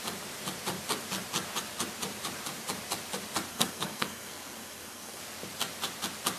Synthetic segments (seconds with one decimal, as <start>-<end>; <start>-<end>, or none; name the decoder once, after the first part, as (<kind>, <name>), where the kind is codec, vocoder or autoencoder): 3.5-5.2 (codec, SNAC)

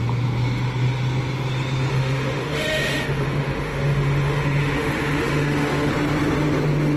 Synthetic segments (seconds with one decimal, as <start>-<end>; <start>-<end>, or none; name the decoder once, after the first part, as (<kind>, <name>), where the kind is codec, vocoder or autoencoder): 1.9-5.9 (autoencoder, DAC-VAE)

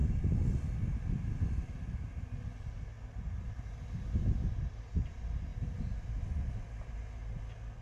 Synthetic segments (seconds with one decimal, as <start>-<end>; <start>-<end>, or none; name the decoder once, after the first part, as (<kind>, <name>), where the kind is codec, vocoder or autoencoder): none

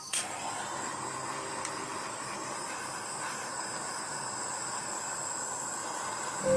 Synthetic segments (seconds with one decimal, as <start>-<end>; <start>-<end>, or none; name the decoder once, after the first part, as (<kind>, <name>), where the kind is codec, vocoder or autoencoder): 0.0-5.8 (vocoder, BigVGAN v2)

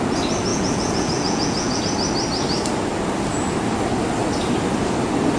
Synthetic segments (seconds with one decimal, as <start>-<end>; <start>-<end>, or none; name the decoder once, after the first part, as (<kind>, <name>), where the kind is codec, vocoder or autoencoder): 0.5-1.8 (vocoder, Vocos)

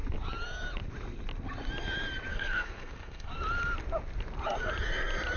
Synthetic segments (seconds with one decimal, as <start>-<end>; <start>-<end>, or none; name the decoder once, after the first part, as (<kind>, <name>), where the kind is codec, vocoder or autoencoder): 2.3-3.3 (codec, SNAC)

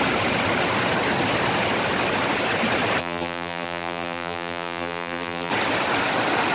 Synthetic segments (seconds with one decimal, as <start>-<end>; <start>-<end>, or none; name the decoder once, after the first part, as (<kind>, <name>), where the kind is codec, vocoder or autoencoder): 3.0-5.5 (vocoder, BigVGAN v2)

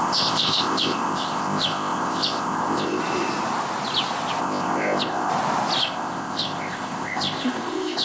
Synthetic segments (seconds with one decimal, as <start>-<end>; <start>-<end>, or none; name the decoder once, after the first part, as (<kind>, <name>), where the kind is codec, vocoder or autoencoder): 0.0-3.0 (codec, ZipCodec); 4.4-5.3; 5.8-8.0